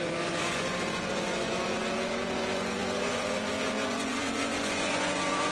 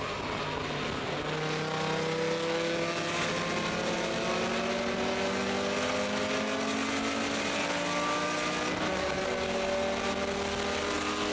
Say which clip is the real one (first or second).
second